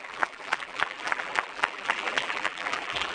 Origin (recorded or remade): remade